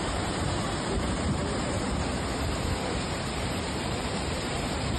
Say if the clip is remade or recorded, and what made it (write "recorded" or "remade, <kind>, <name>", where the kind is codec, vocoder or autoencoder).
remade, vocoder, BigVGAN v2